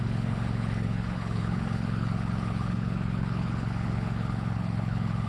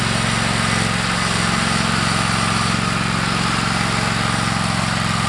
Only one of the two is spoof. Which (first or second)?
first